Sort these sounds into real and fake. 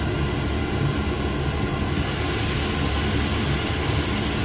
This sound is real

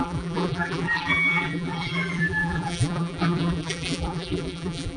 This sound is fake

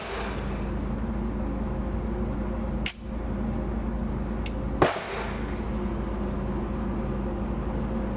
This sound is real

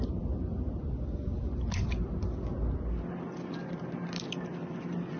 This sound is real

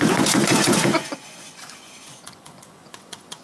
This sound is fake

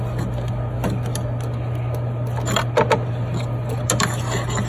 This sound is real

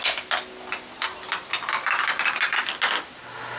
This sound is real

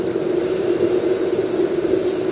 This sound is real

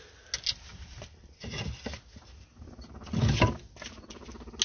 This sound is real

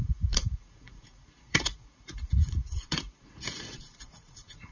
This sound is fake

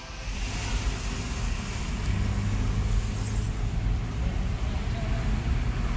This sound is real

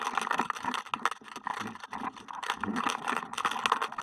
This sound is real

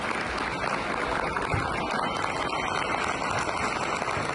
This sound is real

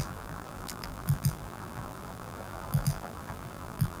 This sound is fake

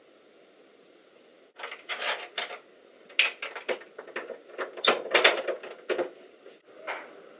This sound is real